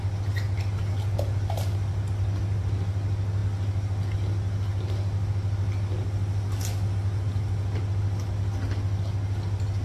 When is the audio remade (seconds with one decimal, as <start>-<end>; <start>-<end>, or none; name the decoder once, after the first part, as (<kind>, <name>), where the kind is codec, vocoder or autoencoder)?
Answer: none